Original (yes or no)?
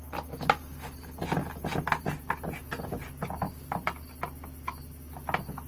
yes